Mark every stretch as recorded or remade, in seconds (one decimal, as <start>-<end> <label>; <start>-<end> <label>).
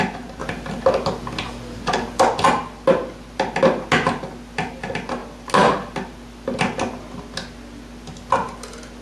0.0-9.0 recorded